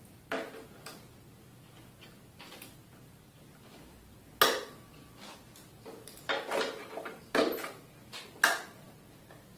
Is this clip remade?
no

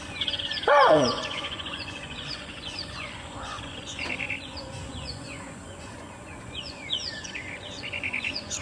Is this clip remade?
yes